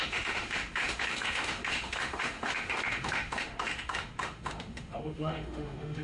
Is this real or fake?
fake